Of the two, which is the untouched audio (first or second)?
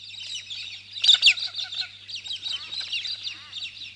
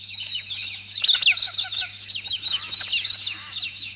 first